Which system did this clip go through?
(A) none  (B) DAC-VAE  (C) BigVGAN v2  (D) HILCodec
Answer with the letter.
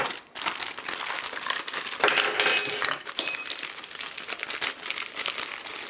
A